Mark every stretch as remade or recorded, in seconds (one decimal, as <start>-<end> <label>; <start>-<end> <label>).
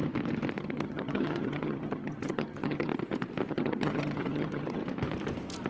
0.0-0.6 recorded; 0.6-2.9 remade; 2.9-3.5 recorded; 3.5-4.8 remade; 4.8-5.7 recorded